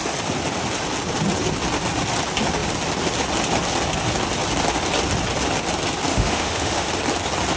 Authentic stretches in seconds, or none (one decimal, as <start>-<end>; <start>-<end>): 0.0-6.1; 6.9-7.6